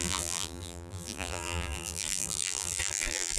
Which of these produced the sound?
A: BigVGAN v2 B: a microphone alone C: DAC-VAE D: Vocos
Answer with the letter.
A